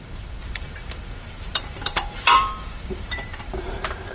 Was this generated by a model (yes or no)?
yes